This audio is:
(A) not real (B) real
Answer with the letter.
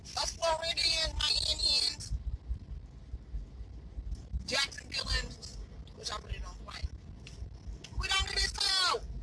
B